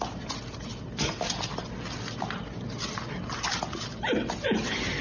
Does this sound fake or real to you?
fake